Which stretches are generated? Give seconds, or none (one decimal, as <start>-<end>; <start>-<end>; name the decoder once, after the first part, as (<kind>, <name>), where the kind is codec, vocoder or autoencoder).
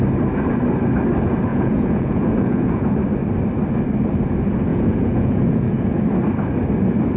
1.5-3.0 (vocoder, Vocos); 4.7-6.0